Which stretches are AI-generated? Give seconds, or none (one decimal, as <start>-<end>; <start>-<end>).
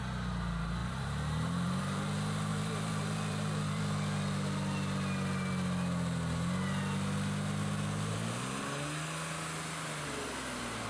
0.8-1.8; 2.5-3.8